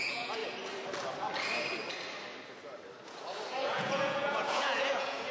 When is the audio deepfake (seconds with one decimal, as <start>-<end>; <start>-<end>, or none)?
0.0-0.4; 3.6-5.3

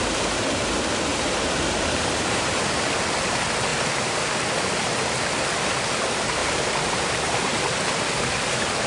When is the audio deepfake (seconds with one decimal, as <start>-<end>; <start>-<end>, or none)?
1.1-2.4; 3.7-4.3; 6.4-7.6